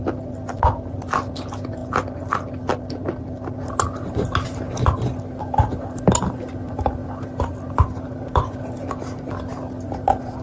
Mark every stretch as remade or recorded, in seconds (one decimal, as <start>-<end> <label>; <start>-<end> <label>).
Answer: 0.0-10.4 recorded